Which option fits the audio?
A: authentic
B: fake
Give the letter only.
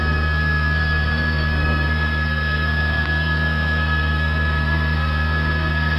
B